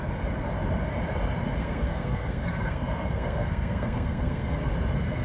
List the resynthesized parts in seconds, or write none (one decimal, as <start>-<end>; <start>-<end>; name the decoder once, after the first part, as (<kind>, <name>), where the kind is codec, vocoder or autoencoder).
1.6-4.7 (codec, SNAC)